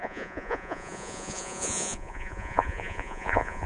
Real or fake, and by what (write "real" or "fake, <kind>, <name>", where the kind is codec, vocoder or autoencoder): fake, vocoder, Vocos